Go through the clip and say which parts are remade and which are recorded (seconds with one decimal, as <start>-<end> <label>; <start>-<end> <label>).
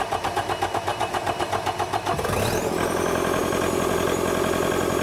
0.0-5.0 recorded